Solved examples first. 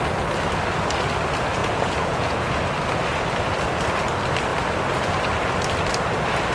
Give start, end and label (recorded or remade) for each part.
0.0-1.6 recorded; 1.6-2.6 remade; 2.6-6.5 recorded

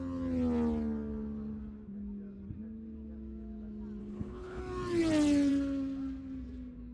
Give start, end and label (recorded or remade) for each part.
0.0-4.0 recorded; 4.0-4.6 remade; 4.6-6.9 recorded

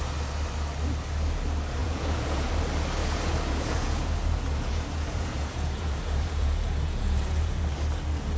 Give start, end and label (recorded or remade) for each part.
0.0-1.8 recorded; 1.8-2.5 remade; 2.5-3.0 recorded; 3.0-7.6 remade; 7.6-8.4 recorded